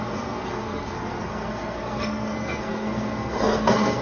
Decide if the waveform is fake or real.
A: fake